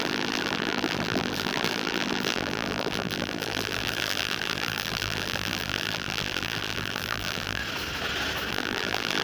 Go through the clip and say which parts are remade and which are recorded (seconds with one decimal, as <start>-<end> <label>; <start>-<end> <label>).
0.0-7.6 remade; 7.6-8.5 recorded; 8.5-9.2 remade